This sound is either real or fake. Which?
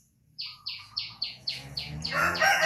fake